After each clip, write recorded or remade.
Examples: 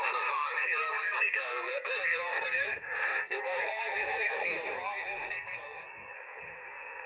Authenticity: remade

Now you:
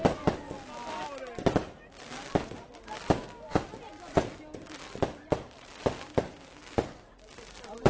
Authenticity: recorded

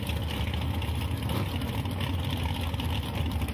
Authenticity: recorded